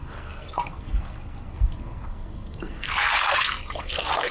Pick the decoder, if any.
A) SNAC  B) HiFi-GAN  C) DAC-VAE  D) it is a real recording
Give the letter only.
A